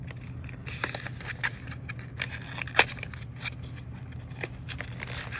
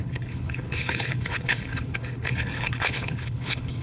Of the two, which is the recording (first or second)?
first